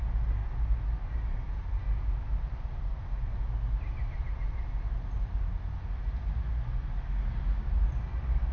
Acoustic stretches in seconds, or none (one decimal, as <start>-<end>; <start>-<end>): 0.0-8.5